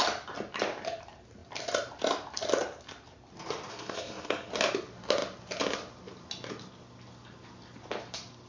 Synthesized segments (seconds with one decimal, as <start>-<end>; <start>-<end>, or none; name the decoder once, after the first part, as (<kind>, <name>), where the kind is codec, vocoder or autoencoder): 3.7-4.5 (codec, SNAC)